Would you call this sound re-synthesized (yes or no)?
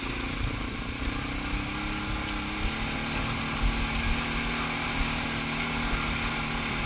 no